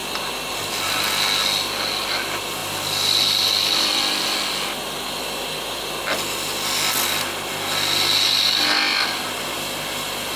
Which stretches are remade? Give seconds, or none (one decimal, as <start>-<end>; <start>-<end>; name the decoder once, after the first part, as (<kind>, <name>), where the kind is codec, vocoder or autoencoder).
none